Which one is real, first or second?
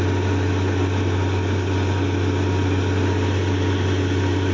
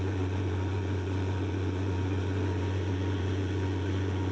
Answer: first